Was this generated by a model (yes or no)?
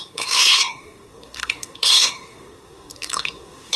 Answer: yes